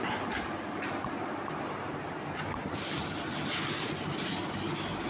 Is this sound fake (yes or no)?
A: no